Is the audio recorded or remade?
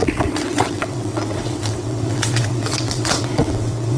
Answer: remade